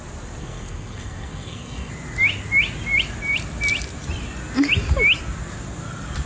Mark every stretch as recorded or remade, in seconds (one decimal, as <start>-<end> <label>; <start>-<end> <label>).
0.0-0.4 recorded; 0.4-1.9 remade; 1.9-6.3 recorded